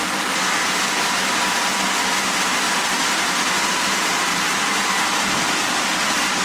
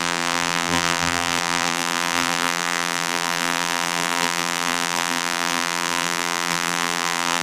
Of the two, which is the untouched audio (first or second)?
first